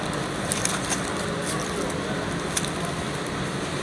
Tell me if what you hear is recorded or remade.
recorded